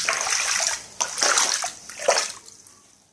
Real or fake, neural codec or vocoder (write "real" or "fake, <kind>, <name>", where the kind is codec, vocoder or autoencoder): real